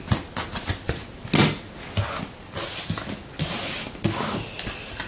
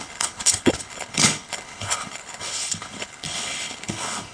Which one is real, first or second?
first